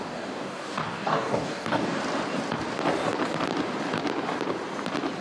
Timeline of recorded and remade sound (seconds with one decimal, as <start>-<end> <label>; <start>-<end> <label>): 0.0-2.0 remade; 2.0-5.2 recorded